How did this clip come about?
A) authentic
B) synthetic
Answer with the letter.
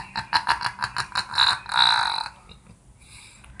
A